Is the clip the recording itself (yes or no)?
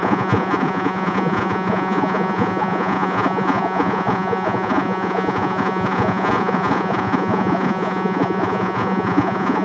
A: no